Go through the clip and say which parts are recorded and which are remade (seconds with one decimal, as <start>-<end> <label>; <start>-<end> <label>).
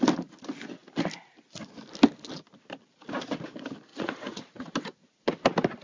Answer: 0.0-3.9 recorded; 3.9-4.7 remade; 4.7-5.8 recorded